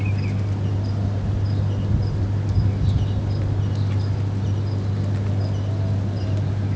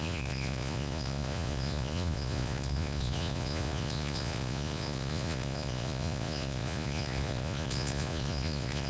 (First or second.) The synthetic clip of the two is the second